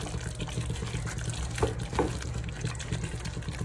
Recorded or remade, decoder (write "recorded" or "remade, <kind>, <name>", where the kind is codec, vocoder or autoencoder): recorded